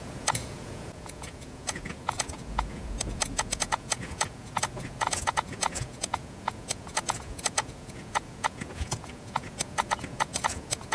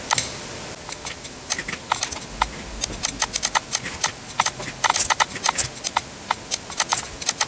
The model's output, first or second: first